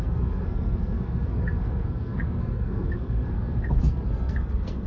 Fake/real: fake